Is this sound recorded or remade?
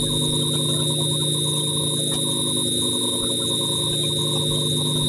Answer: recorded